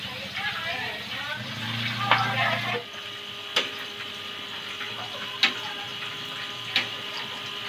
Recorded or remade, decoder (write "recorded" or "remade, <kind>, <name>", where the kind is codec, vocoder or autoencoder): recorded